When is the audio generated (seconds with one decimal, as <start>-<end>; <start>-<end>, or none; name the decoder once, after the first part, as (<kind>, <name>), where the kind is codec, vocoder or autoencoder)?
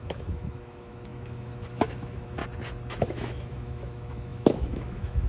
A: 0.0-2.4 (autoencoder, DAC-VAE); 3.0-5.3